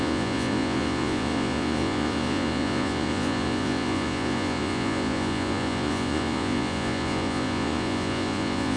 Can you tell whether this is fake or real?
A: fake